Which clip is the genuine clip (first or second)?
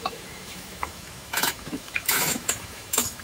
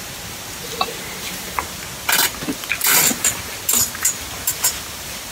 second